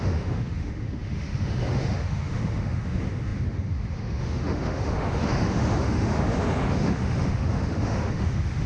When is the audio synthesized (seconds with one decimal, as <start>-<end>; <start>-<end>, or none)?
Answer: 0.0-8.7